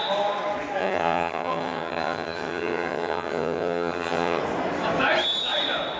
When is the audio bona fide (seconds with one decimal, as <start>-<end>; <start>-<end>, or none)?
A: 0.0-0.8; 4.4-6.0